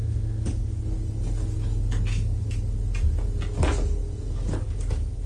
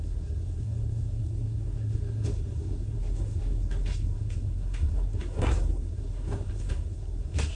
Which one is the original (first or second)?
first